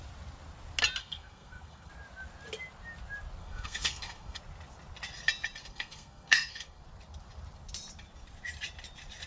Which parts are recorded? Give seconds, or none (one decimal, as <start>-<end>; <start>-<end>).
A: 0.0-1.0; 1.9-3.4; 4.4-5.6; 6.8-9.3